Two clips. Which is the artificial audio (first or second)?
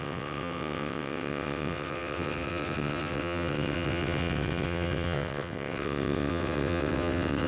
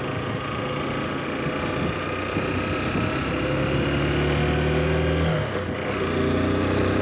first